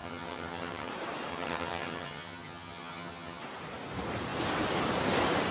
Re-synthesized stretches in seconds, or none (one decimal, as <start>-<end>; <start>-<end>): 0.0-0.9; 1.3-3.4